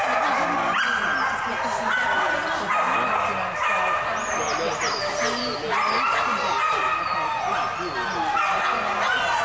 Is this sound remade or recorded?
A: recorded